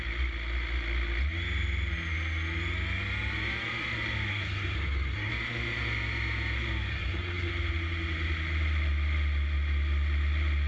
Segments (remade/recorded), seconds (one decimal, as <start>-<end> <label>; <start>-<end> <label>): 0.0-4.3 recorded; 4.3-5.3 remade; 5.3-6.9 recorded; 6.9-7.5 remade; 7.5-10.7 recorded